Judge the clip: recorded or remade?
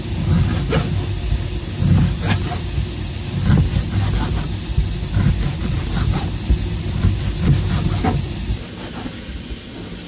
recorded